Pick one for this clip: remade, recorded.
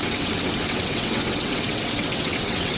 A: remade